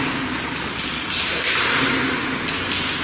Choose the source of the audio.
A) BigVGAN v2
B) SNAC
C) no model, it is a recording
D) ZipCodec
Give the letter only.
C